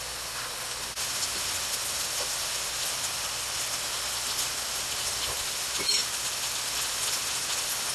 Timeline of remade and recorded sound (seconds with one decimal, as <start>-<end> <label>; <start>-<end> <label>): 0.0-7.9 recorded